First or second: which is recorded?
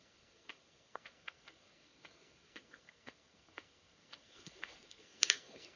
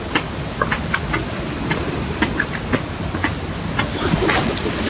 second